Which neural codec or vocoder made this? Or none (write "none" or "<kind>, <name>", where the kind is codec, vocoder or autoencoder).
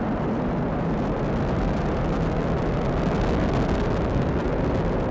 none